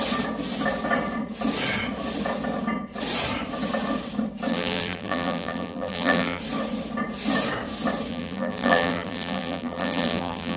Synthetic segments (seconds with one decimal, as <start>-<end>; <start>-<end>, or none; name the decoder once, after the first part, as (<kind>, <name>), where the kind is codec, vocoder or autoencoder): 4.5-6.4 (vocoder, BigVGAN v2); 8.1-10.6